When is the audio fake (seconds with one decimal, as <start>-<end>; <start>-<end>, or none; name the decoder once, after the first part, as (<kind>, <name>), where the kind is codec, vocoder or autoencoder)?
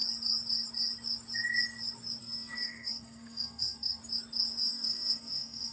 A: 2.2-4.0 (codec, SNAC); 4.6-5.7